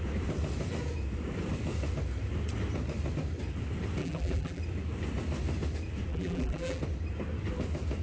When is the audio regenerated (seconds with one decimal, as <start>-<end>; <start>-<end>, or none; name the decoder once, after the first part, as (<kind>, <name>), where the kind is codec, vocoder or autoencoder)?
4.0-4.6 (vocoder, BigVGAN v2); 6.1-6.8